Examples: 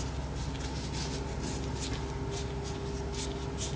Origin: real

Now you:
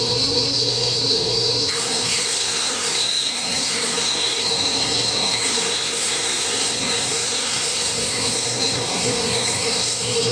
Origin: fake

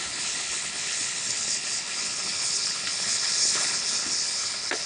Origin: fake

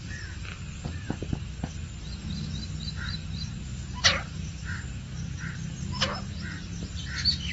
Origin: fake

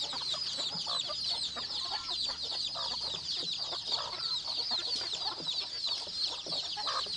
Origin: real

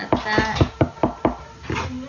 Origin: real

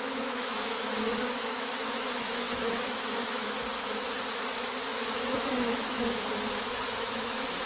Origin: fake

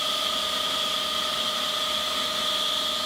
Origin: real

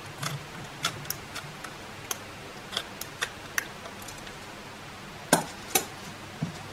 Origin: real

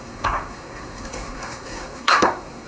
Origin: fake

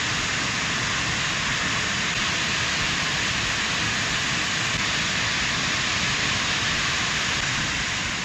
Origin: real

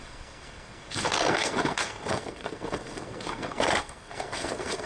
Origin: fake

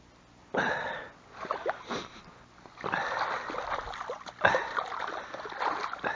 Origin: real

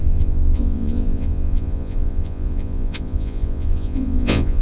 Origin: fake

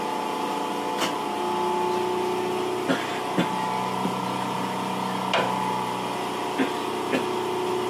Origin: real